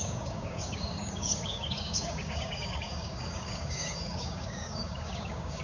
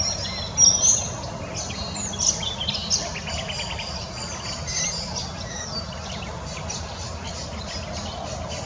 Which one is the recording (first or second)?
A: second